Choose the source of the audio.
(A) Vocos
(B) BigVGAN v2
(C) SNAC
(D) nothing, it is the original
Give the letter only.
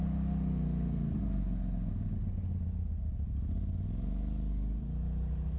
D